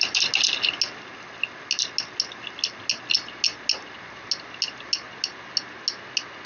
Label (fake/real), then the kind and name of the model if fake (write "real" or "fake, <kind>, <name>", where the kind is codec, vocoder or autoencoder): real